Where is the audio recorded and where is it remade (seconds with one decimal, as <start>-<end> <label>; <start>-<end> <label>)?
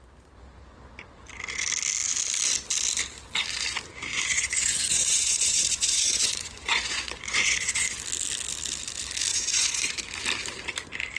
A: 0.0-4.1 recorded; 4.1-8.0 remade; 8.0-9.3 recorded; 9.3-10.1 remade; 10.1-11.2 recorded